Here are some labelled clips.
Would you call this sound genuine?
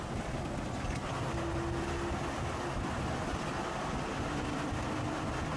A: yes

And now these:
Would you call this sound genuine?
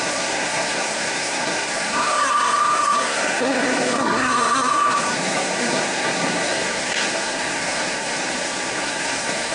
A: no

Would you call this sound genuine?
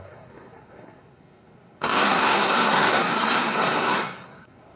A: no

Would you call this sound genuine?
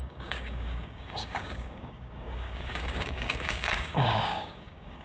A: no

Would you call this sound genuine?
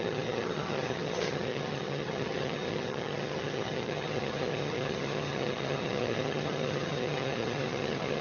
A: no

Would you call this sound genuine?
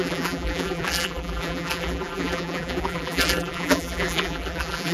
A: no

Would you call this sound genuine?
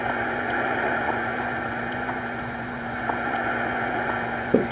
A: no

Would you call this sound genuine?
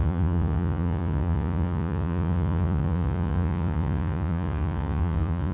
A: no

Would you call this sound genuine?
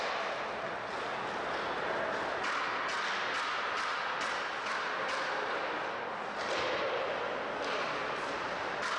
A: yes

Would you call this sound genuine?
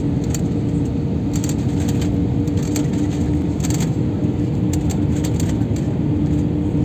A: yes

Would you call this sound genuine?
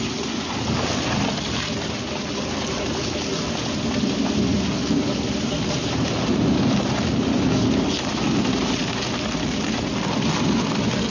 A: yes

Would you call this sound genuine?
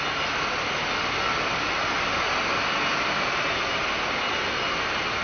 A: yes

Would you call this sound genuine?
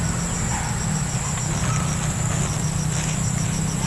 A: yes